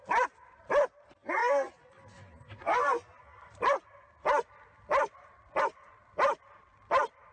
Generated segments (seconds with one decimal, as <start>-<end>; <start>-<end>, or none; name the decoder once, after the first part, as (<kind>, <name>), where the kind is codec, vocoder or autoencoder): none